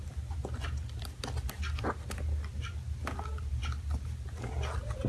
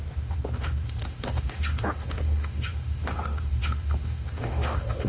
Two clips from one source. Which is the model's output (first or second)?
second